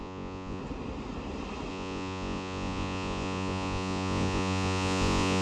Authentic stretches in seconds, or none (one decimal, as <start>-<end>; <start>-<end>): 0.6-1.7